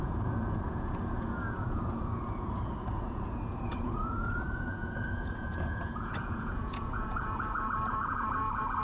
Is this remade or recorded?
remade